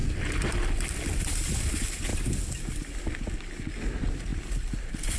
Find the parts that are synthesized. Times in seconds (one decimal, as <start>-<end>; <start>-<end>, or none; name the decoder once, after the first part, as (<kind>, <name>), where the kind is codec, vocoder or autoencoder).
none